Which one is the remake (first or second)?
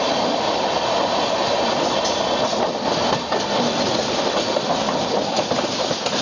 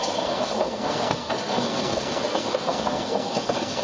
second